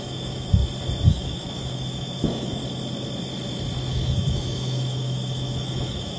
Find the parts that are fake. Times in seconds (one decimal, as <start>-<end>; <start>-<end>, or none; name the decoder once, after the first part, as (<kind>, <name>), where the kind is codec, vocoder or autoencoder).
0.0-0.6 (autoencoder, DAC-VAE); 1.1-2.6; 3.9-6.2